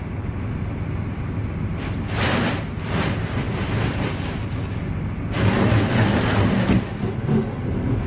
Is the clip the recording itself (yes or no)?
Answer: yes